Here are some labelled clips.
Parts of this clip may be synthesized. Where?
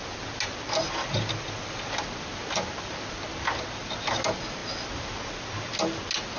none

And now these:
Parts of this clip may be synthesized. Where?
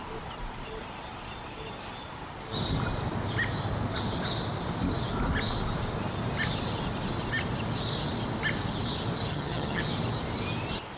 9.3-9.8 (vocoder, HiFi-GAN)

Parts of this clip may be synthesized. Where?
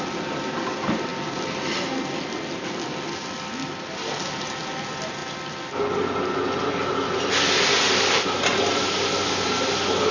none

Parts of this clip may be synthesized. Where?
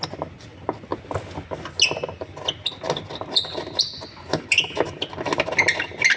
none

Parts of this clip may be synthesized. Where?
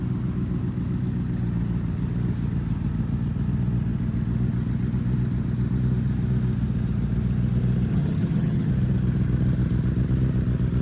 7.9-8.7 (vocoder, HiFi-GAN)